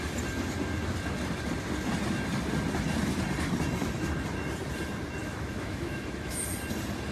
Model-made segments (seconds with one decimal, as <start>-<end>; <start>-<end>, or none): 5.2-6.4